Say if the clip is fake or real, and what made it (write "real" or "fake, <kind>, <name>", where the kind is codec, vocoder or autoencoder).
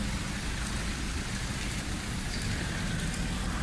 fake, vocoder, BigVGAN v2